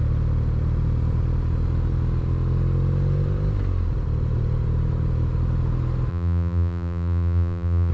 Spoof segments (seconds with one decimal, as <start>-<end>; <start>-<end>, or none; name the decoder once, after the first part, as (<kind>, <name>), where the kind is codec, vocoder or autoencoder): 6.1-7.9 (vocoder, BigVGAN v2)